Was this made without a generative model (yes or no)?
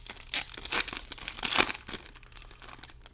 yes